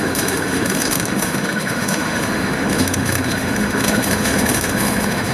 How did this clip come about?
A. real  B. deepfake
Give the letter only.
B